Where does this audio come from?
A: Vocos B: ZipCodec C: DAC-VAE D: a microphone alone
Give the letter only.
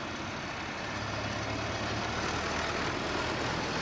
D